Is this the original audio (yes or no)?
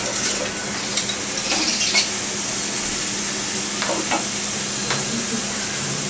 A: yes